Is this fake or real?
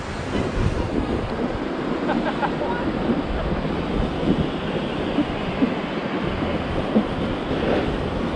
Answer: real